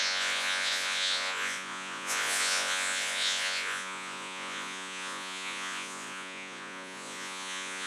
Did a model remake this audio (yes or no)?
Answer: yes